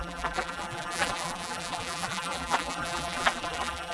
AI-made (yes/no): yes